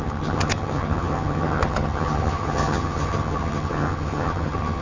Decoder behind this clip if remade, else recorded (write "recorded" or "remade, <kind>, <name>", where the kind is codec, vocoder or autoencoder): remade, vocoder, HiFi-GAN